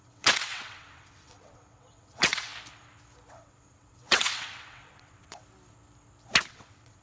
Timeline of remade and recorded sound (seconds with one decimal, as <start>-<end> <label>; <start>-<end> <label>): 0.0-2.5 remade; 2.5-3.3 recorded; 3.3-5.4 remade; 5.4-6.5 recorded; 6.5-7.0 remade